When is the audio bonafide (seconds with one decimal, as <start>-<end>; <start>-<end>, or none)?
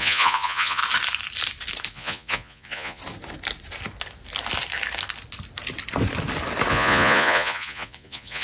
0.8-1.9; 3.0-6.7